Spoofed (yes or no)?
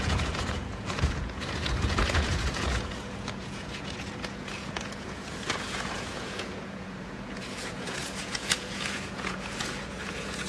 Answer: yes